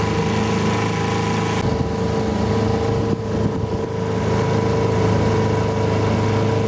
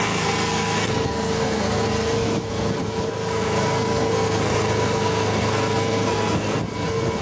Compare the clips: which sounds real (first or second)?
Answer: first